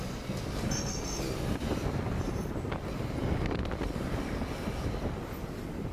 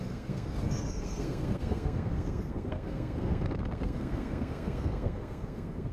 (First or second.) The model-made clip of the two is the second